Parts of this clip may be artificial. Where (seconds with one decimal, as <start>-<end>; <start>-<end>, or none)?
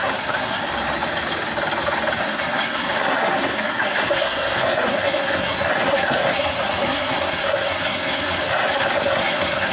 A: 0.0-0.6; 2.2-9.7